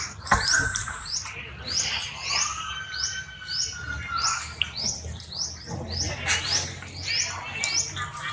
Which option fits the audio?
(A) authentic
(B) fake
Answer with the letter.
A